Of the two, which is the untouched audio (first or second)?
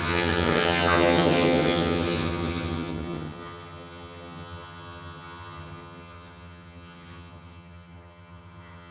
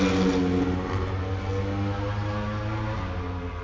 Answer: second